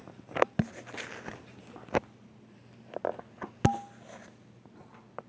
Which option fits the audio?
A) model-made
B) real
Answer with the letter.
B